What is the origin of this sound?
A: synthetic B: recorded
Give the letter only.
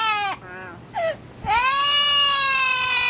B